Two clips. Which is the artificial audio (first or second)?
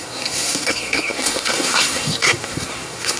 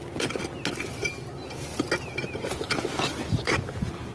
first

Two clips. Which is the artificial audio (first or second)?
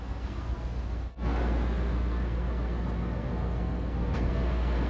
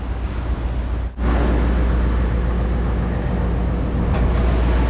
first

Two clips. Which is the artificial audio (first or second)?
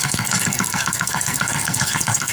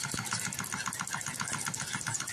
first